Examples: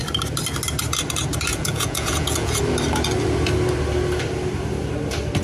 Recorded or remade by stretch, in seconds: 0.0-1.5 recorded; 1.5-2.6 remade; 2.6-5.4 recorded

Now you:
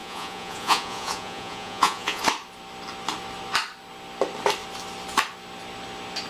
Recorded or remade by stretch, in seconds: 0.0-2.2 remade; 2.2-6.3 recorded

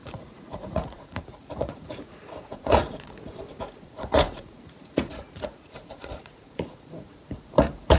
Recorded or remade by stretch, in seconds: 0.0-8.0 remade

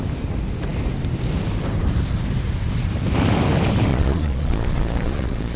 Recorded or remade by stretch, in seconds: 0.0-3.9 recorded; 3.9-5.6 remade